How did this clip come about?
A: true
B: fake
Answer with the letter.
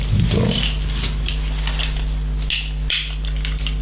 A